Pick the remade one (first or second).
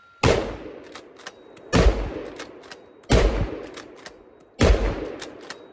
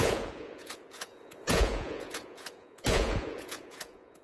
second